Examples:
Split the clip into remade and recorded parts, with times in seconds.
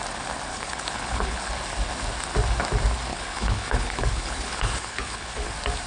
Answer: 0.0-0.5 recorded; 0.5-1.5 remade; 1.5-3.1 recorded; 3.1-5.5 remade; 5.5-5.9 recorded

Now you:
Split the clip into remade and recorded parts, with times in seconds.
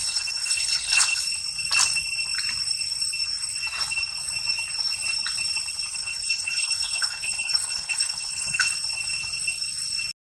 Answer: 0.0-1.2 remade; 1.2-5.9 recorded; 5.9-8.7 remade; 8.7-10.2 recorded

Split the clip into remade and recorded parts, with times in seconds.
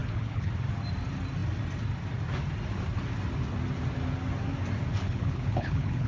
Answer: 0.0-0.5 remade; 0.5-5.0 recorded; 5.0-6.1 remade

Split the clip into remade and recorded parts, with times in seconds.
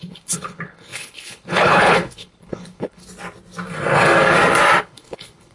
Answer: 0.0-3.0 remade; 3.0-4.8 recorded; 4.8-5.5 remade